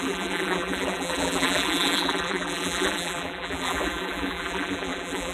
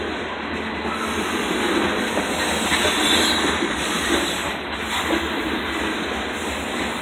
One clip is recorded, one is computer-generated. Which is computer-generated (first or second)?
first